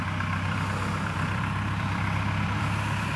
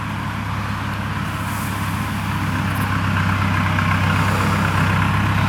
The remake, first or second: first